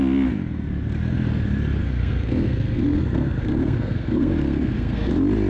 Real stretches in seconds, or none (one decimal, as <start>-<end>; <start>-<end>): 0.0-1.8; 5.1-5.5